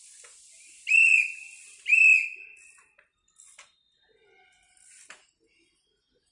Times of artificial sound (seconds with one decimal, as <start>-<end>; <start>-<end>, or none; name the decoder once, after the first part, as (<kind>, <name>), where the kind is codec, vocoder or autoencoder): none